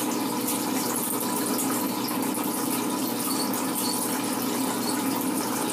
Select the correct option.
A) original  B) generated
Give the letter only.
A